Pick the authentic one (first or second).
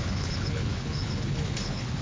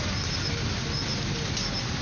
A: second